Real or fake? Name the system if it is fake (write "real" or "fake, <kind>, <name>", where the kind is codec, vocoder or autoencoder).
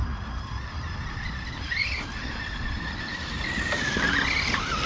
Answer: real